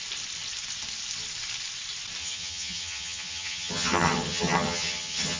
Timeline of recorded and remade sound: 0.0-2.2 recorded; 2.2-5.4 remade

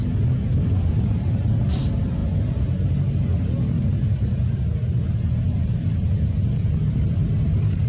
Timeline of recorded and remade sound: 0.0-1.6 recorded; 1.6-2.2 remade; 2.2-6.9 recorded; 6.9-7.9 remade